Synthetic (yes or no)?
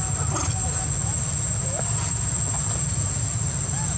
no